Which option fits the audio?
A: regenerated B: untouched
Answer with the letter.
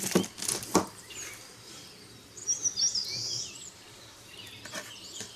A